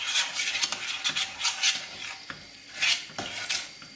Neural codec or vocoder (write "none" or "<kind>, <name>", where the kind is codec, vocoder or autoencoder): none